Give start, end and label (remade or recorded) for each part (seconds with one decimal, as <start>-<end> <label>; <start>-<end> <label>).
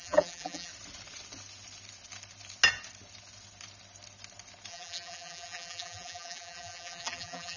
0.0-0.7 remade; 0.7-4.7 recorded; 4.7-7.6 remade